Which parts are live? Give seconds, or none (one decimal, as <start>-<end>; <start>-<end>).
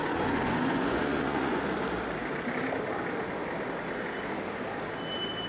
1.6-5.5